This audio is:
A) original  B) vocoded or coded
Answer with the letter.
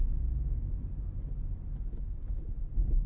A